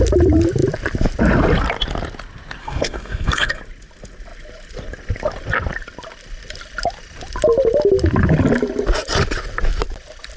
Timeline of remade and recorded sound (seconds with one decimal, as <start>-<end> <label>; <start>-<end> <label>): 0.0-2.6 recorded; 2.6-3.6 remade; 3.6-10.4 recorded